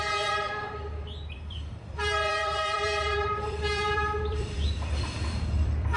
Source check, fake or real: fake